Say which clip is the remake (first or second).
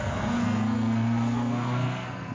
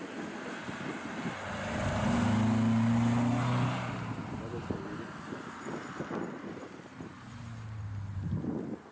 first